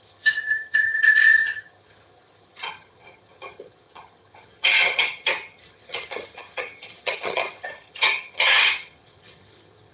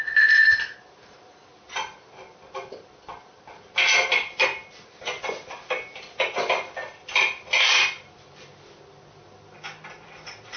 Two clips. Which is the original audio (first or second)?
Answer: second